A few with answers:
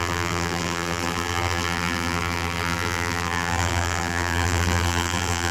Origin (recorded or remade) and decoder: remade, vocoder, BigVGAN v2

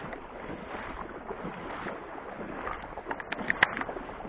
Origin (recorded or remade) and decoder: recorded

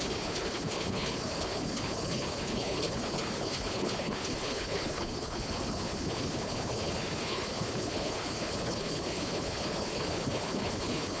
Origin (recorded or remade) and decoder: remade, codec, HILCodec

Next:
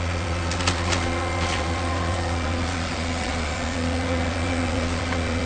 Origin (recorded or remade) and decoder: remade, vocoder, Vocos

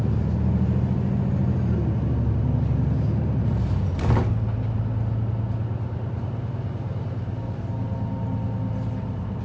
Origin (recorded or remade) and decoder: recorded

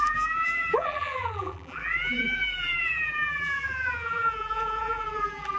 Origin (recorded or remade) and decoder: remade, vocoder, BigVGAN v2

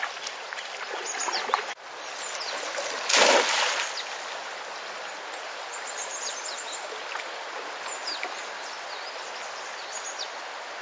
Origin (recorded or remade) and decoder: recorded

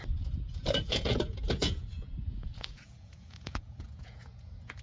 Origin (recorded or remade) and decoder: remade, vocoder, Vocos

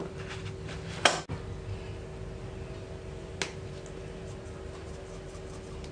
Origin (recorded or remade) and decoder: recorded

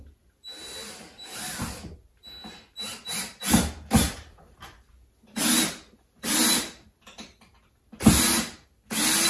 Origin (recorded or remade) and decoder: recorded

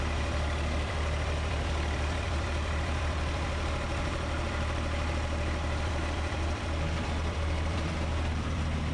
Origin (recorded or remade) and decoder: remade, vocoder, BigVGAN v2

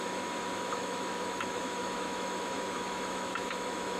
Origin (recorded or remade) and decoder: remade, autoencoder, DAC-VAE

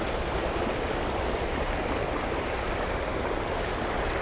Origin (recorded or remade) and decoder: recorded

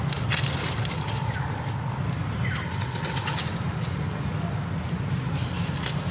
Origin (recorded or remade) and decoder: recorded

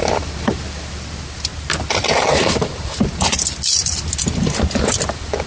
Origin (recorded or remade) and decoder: recorded